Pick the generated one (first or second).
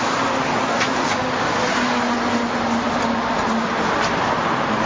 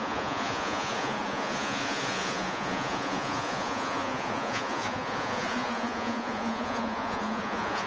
second